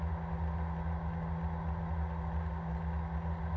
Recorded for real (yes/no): yes